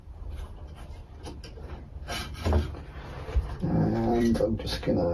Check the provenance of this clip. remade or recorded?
remade